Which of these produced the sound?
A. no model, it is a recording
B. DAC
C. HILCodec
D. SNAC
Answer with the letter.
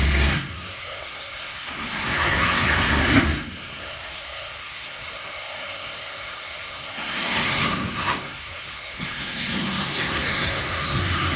D